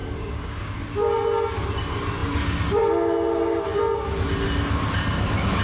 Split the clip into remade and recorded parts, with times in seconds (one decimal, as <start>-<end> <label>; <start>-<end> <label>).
0.0-0.7 remade; 0.7-5.6 recorded